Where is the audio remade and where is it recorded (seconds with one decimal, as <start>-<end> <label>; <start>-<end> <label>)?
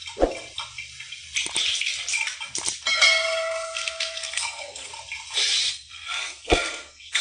0.0-2.9 recorded; 2.9-4.9 remade; 4.9-5.7 recorded; 5.7-7.2 remade